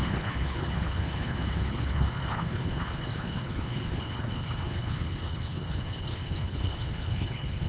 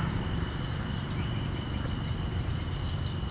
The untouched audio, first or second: second